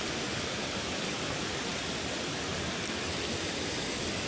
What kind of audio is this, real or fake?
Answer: real